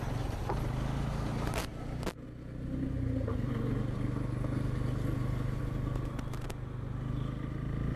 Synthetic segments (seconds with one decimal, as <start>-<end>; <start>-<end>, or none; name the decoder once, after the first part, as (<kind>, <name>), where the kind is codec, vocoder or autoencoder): none